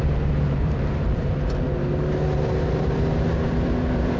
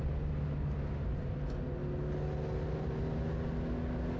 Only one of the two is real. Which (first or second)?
second